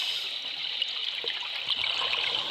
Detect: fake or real real